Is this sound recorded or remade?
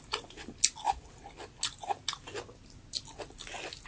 recorded